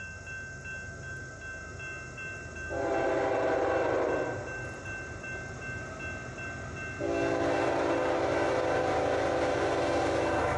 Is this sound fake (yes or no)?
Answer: no